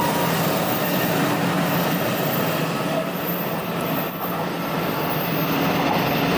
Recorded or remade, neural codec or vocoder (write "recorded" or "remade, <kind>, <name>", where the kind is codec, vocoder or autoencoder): recorded